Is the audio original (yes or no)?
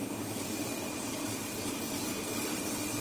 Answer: yes